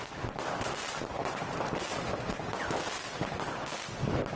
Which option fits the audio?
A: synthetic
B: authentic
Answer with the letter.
B